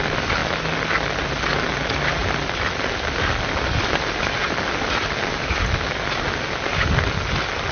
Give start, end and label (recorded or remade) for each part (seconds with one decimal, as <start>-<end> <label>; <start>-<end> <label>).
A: 0.0-7.7 recorded